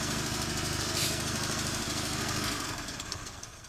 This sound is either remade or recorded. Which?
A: remade